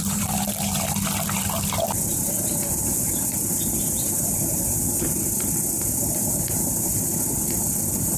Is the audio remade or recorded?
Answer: remade